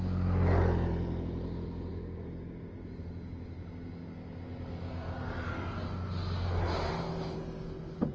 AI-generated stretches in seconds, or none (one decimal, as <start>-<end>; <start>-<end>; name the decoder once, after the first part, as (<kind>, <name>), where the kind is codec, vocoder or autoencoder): none